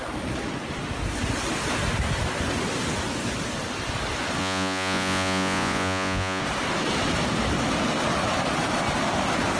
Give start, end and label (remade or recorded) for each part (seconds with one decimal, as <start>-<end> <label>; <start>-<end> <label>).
0.0-4.4 recorded; 4.4-6.4 remade; 6.4-9.6 recorded